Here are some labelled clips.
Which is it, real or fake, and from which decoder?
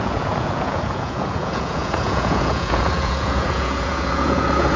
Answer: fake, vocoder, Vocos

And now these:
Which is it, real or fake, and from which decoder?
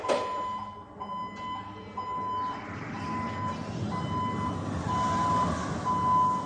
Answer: real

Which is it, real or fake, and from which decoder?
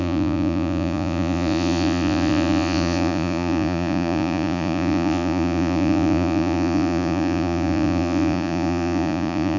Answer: fake, vocoder, Vocos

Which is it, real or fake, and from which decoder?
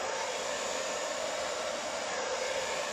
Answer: real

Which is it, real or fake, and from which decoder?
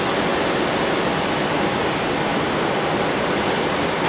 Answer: real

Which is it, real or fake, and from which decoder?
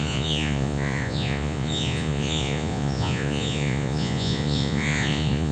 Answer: fake, vocoder, Vocos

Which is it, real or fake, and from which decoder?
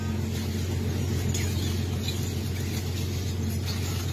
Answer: real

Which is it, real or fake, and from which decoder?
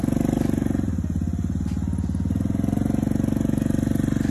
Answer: real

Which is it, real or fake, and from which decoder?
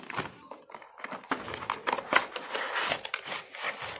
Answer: real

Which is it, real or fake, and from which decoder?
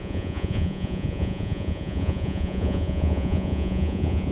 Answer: fake, vocoder, Vocos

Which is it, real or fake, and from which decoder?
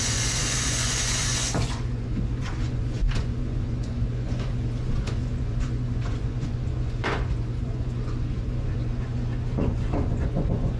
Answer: fake, vocoder, Vocos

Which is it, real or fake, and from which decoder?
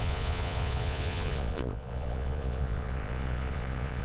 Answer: fake, vocoder, Vocos